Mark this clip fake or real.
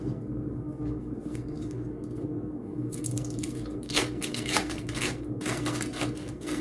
fake